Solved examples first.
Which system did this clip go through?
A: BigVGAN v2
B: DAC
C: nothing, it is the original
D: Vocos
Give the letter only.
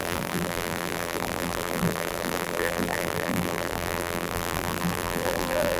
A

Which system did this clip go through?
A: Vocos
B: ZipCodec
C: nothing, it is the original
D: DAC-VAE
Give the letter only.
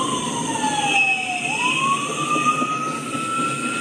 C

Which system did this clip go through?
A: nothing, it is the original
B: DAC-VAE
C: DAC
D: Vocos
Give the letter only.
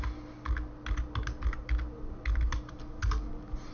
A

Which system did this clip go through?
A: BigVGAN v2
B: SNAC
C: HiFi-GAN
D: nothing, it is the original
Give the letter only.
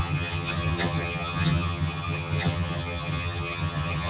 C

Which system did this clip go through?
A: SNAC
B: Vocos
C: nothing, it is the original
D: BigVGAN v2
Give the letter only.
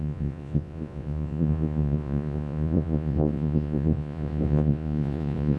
B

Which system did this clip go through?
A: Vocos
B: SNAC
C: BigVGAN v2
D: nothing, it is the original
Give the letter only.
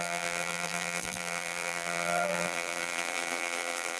C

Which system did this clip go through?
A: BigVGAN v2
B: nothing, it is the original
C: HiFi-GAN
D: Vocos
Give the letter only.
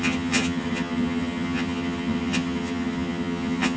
C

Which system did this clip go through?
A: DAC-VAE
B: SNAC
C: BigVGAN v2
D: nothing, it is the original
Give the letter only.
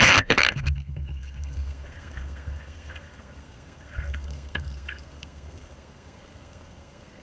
B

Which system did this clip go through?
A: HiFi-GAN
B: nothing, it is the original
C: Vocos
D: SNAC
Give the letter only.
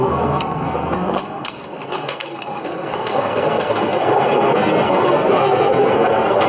D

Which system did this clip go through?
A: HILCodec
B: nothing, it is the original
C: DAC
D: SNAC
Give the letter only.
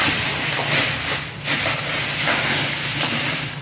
B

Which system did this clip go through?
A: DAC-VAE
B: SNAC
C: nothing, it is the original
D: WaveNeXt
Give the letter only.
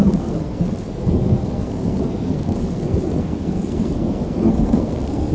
B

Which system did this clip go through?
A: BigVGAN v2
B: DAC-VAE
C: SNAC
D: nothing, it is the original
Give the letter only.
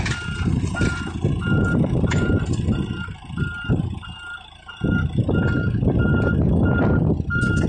A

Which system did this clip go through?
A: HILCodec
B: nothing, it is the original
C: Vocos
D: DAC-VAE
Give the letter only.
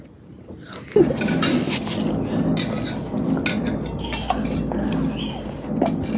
B